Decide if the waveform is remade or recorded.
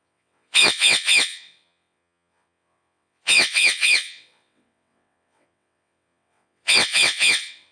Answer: remade